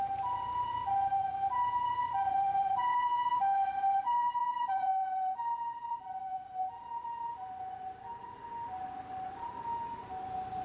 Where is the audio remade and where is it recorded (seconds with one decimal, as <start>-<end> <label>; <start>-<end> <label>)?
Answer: 0.0-1.2 recorded; 1.2-1.9 remade; 1.9-10.6 recorded